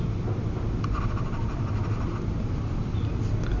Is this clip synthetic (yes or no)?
no